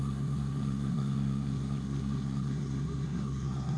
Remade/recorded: remade